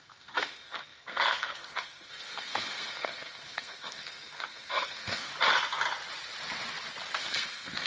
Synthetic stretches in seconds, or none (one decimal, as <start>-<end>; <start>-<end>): 0.0-5.3; 7.2-7.9